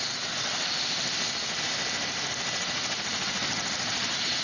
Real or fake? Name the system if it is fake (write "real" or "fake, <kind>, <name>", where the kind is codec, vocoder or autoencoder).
real